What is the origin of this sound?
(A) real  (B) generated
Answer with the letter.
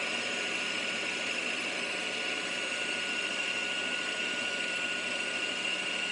A